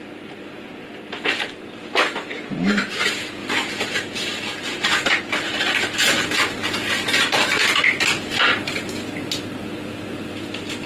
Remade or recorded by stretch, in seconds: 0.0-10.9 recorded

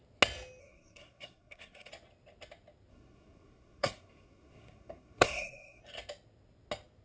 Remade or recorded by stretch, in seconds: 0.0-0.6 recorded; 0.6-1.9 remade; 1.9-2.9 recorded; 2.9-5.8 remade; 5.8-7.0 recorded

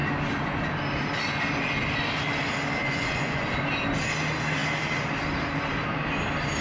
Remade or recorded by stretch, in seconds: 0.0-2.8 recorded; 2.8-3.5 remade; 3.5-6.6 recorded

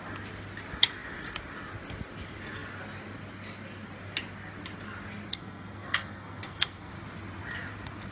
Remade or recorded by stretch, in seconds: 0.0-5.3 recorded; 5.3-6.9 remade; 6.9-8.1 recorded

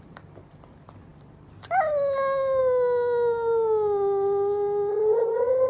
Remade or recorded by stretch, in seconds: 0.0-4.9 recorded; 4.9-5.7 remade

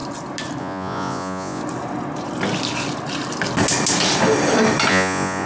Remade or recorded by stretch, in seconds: 0.0-0.6 recorded; 0.6-1.6 remade; 1.6-4.9 recorded; 4.9-5.5 remade

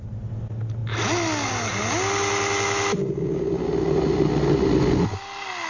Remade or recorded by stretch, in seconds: 0.0-5.7 recorded

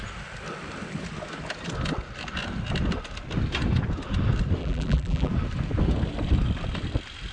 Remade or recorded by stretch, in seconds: 0.0-4.6 recorded; 4.6-5.3 remade; 5.3-7.3 recorded